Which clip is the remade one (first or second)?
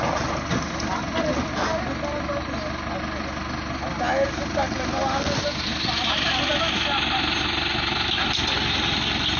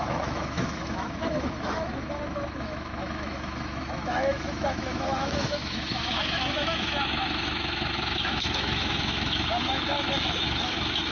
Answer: second